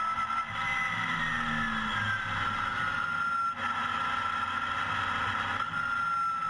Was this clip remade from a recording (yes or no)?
no